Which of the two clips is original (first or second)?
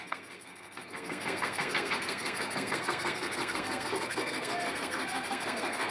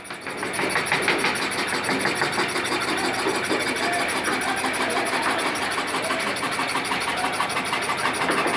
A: second